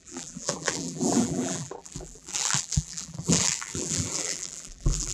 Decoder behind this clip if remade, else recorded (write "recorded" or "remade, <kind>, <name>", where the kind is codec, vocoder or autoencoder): remade, vocoder, BigVGAN v2